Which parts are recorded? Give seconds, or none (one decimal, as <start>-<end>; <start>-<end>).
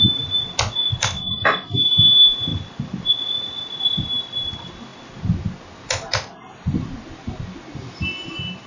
0.0-8.7